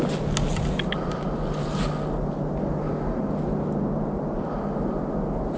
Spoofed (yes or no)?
no